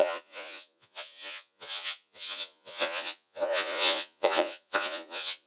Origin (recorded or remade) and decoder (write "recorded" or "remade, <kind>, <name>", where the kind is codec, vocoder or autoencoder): remade, vocoder, Vocos